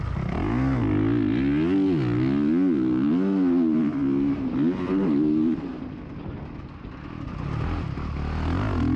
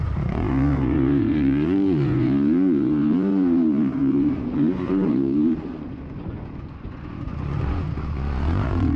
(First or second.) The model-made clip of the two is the second